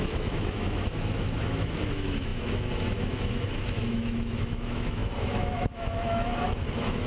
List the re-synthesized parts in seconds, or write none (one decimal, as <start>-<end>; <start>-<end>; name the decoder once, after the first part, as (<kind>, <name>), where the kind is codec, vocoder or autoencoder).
0.0-7.1 (autoencoder, DAC-VAE)